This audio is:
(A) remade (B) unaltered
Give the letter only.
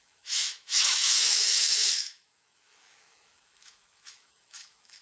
A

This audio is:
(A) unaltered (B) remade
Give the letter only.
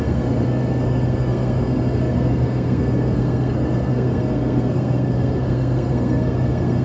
B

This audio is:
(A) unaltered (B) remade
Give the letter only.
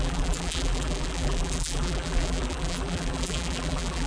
B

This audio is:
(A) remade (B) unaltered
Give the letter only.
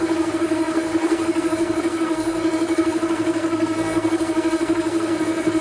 A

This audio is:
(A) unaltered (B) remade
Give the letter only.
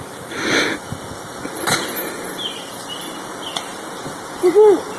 A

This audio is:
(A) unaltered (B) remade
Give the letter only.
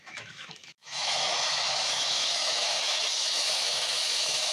B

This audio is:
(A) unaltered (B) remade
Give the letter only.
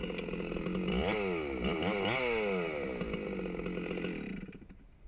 A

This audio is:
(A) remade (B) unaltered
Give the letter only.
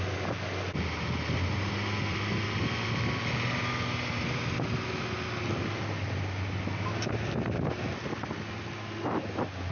B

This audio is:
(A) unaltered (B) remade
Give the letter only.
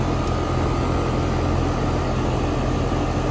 A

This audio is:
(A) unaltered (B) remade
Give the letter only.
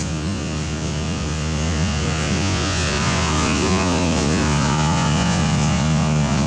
B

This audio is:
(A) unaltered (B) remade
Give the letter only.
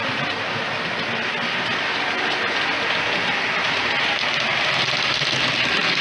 A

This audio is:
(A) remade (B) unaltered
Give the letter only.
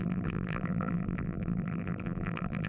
A